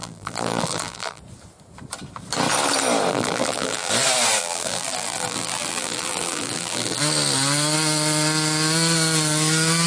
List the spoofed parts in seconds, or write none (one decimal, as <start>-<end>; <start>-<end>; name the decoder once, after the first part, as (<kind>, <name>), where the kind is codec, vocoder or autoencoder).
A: 0.0-1.2 (vocoder, BigVGAN v2); 3.1-3.9; 4.4-7.0